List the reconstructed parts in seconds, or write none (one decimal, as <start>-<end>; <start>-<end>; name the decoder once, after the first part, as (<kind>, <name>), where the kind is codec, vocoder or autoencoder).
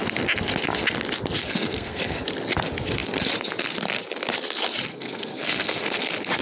1.4-2.2 (codec, SNAC); 4.9-6.0